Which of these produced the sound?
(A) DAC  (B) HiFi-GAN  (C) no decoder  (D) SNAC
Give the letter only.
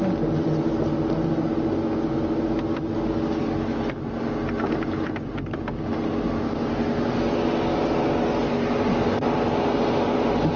C